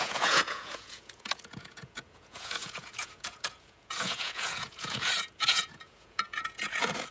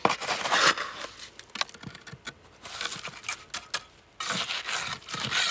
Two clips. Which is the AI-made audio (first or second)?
first